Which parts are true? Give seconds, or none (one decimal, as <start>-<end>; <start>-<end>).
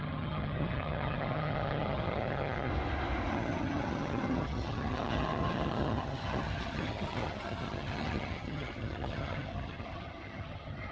2.7-3.3